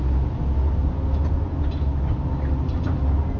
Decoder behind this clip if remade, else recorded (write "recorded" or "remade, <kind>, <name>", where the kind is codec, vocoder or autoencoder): recorded